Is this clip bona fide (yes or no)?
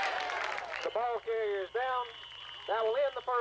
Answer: yes